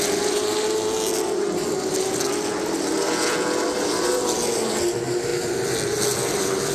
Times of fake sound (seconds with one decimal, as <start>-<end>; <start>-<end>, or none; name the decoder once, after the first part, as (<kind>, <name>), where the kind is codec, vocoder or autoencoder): none